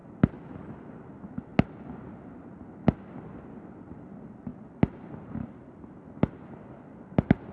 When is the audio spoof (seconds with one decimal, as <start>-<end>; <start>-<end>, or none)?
none